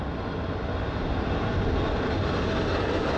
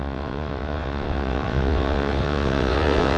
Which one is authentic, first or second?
first